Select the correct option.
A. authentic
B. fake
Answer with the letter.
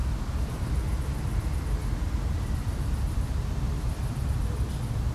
A